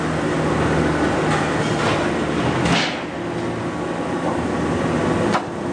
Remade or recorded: recorded